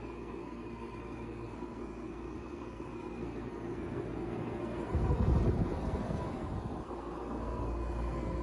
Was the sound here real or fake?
fake